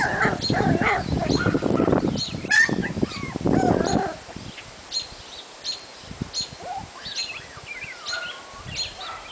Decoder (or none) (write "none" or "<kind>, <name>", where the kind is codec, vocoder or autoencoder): none